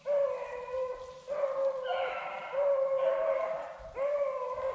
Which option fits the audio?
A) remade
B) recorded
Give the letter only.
B